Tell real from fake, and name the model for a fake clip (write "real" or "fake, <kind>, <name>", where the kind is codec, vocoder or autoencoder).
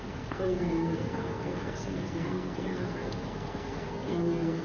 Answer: fake, codec, SNAC